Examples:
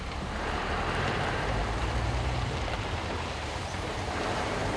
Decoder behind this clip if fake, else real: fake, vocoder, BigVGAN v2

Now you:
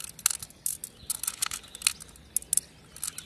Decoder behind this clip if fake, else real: real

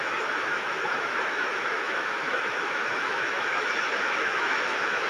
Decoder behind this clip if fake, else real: fake, autoencoder, DAC-VAE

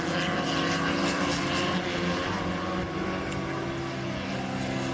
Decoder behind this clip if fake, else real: real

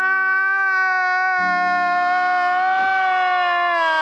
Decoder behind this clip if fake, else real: real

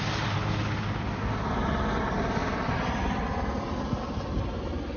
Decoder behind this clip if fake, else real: real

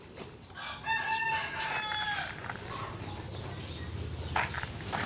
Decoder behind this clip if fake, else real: real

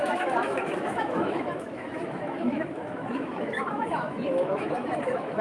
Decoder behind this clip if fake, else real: fake, autoencoder, DAC-VAE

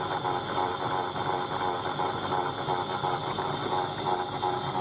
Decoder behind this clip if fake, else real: real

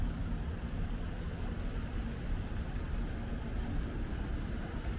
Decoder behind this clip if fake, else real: real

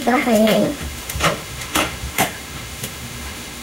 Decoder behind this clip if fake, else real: fake, autoencoder, DAC-VAE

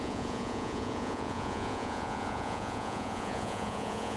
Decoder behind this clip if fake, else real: fake, vocoder, Vocos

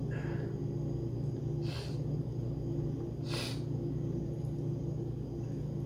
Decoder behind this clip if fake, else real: real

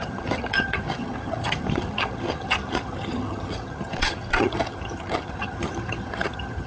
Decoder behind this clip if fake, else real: fake, vocoder, HiFi-GAN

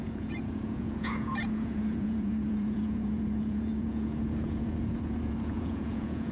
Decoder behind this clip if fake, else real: fake, vocoder, Vocos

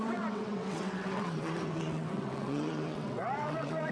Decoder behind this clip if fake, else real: fake, vocoder, WaveNeXt